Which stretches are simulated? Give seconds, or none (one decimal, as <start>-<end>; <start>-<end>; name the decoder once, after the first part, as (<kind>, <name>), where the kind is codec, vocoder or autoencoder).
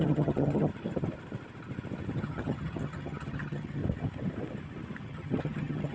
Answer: 0.0-0.7 (vocoder, HiFi-GAN); 2.1-3.8; 5.0-5.9